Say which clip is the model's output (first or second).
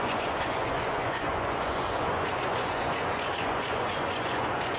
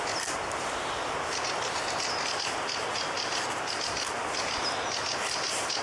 first